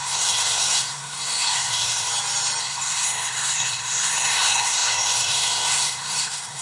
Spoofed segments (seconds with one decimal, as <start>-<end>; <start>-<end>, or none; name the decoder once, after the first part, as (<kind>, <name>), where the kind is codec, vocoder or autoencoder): 0.0-2.1 (codec, SNAC); 2.6-6.6